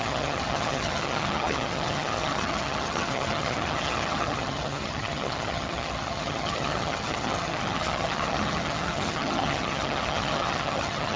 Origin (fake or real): fake